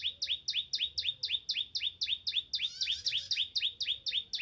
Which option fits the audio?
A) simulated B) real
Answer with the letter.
B